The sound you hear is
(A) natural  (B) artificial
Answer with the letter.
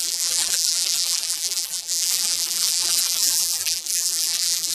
B